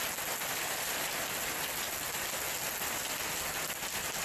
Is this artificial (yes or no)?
no